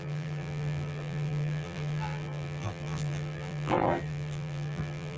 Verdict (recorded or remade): remade